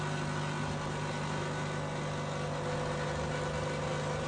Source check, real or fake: real